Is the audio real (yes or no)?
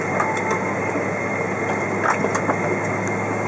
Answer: yes